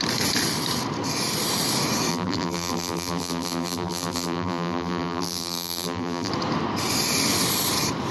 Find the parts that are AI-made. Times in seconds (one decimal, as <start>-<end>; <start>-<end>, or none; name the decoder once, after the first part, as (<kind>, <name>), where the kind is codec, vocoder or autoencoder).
2.1-6.3 (vocoder, BigVGAN v2)